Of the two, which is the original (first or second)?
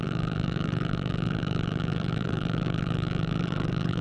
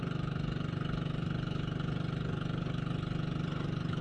second